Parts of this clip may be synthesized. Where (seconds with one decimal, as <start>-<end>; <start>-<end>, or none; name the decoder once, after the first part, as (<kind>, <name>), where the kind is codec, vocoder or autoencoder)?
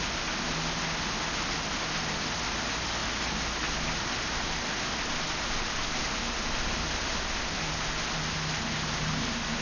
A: none